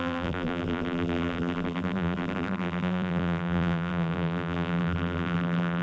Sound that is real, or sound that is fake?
fake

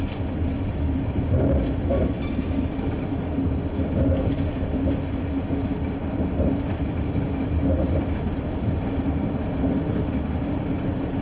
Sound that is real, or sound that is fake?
real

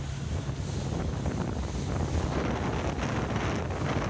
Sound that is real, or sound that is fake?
real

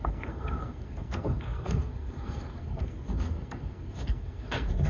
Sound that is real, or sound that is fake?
fake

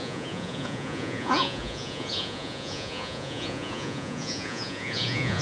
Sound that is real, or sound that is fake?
fake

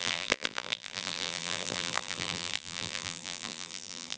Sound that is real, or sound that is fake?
fake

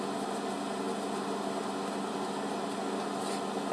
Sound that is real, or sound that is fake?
real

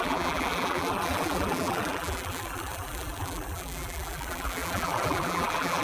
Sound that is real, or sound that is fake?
fake